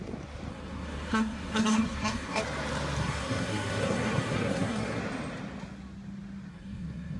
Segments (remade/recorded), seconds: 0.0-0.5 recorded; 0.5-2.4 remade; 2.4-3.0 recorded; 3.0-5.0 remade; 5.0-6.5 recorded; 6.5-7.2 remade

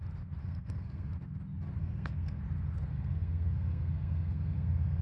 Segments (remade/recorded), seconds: 0.0-0.4 recorded; 0.4-1.1 remade; 1.1-1.8 recorded; 1.8-2.4 remade; 2.4-2.9 recorded; 2.9-5.0 remade